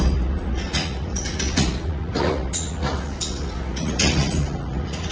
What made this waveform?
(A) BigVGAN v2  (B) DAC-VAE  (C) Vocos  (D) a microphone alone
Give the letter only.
C